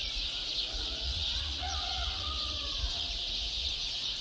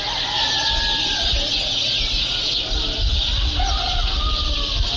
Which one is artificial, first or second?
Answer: first